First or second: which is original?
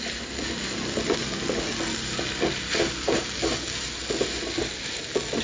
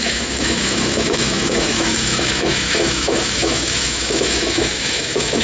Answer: first